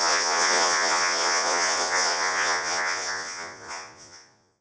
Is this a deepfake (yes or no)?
yes